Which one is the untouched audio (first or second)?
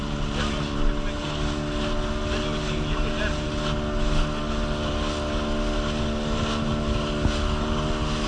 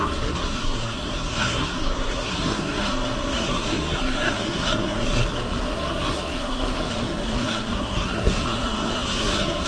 first